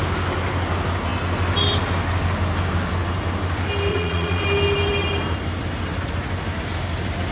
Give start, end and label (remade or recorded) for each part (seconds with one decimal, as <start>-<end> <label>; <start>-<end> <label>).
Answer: 0.0-3.9 recorded; 3.9-4.4 remade; 4.4-7.3 recorded